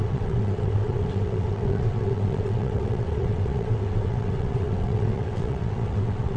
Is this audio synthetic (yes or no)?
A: yes